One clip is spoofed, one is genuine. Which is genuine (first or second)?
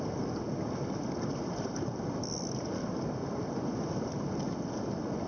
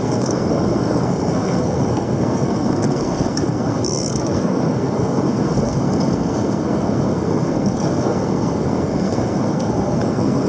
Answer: first